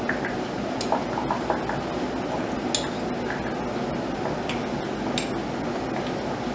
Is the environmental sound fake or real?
real